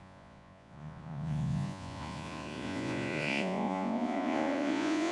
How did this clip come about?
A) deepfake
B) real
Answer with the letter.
A